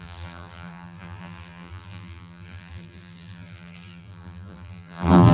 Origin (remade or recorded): remade